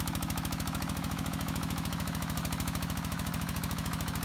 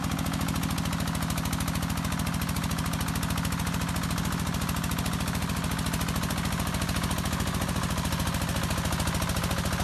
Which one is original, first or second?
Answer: second